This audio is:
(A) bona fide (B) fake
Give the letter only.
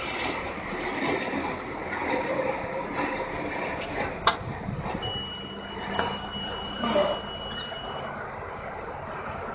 A